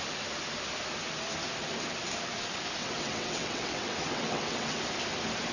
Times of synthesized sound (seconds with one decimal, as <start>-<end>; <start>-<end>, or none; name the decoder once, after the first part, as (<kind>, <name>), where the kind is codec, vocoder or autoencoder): 2.8-4.8 (vocoder, WaveNeXt)